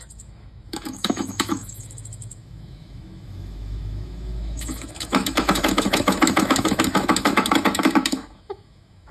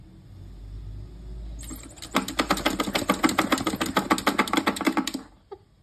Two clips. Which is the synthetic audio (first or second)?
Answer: first